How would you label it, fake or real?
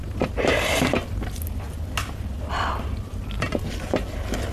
real